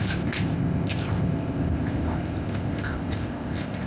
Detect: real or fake fake